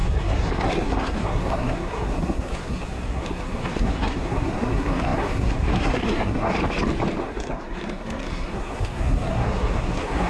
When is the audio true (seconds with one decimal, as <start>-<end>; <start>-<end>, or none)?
6.6-7.2